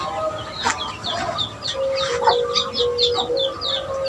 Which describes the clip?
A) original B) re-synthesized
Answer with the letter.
A